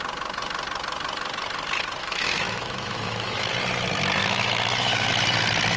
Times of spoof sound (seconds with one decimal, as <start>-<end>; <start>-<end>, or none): 2.0-3.5; 4.2-5.1